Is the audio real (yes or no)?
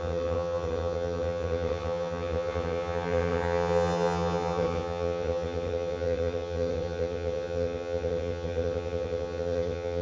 no